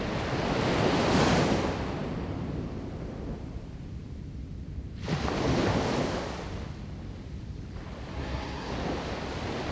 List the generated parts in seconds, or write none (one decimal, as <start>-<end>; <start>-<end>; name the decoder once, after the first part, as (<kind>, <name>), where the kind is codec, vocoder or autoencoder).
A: 8.1-8.7 (codec, SNAC)